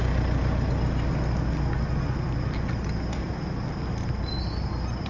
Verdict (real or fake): real